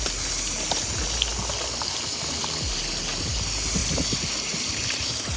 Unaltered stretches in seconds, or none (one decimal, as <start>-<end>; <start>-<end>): 0.0-5.4